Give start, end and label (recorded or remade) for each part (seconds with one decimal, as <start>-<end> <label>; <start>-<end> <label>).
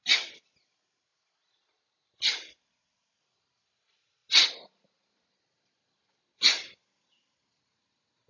0.0-8.3 recorded